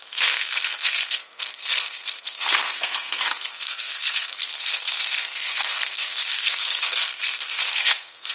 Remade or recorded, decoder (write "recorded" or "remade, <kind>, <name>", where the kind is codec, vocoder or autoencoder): remade, codec, SNAC